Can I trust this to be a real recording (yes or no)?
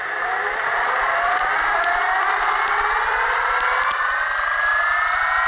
yes